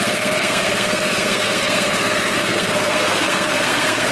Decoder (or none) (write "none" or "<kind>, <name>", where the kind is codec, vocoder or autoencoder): codec, SNAC